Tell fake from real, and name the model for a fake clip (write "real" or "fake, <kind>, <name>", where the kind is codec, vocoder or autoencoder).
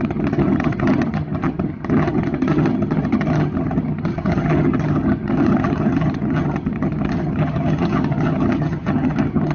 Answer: fake, vocoder, HiFi-GAN